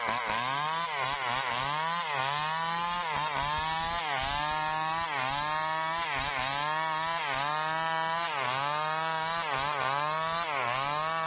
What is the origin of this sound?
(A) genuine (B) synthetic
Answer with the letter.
A